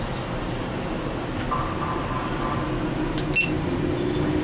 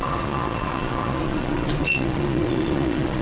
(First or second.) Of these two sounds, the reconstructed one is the second